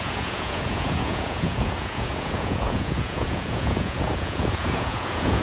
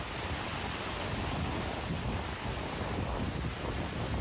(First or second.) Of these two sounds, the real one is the second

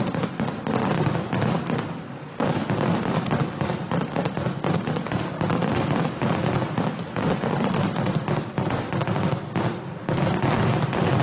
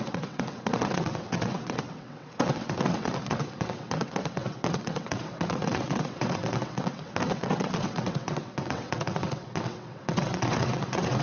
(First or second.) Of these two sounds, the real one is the first